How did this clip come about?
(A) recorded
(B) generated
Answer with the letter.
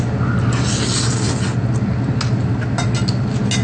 A